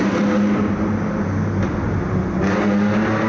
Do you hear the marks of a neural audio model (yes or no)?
no